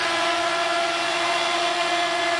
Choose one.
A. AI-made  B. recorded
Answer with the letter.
A